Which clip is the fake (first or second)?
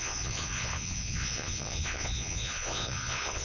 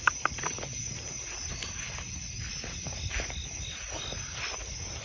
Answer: first